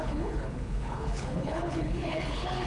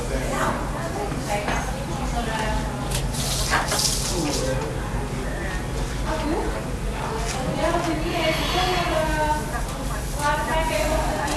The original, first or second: second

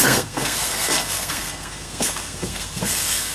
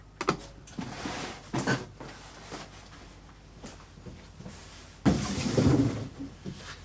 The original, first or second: second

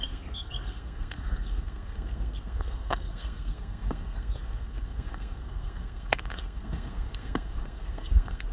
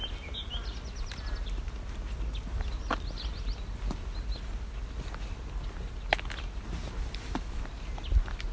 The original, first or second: second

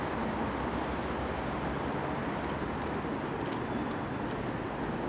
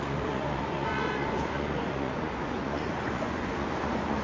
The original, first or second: first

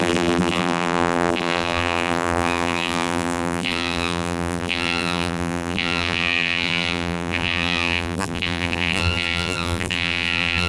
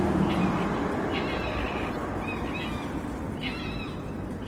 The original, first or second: second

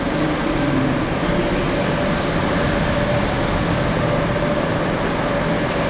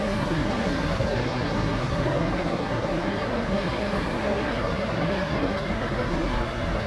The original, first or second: first